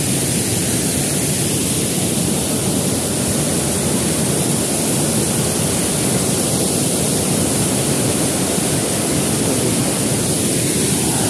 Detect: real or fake real